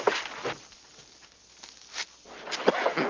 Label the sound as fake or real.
real